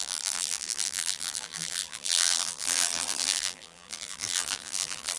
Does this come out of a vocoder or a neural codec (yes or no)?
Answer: yes